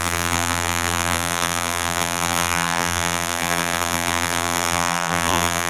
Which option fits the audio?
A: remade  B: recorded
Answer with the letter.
A